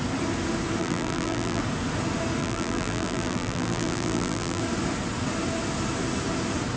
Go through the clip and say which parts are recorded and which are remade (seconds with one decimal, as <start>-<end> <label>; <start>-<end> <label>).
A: 0.0-0.8 recorded; 0.8-1.6 remade; 1.6-2.4 recorded; 2.4-4.6 remade; 4.6-6.8 recorded